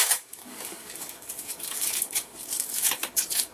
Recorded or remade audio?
remade